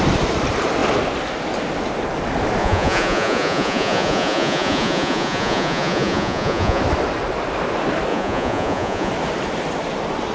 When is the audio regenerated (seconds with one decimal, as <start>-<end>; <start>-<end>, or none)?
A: 2.6-6.8; 8.1-9.1